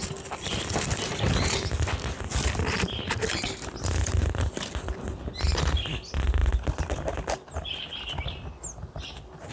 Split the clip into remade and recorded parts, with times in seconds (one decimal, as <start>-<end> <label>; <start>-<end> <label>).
0.0-9.5 recorded